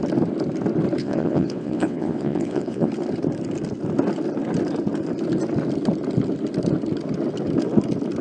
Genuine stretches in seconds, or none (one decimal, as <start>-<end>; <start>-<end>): 0.0-1.0; 2.9-8.2